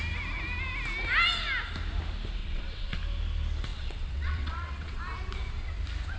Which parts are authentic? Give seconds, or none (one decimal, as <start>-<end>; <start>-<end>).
0.0-2.4; 3.0-3.7; 5.0-6.2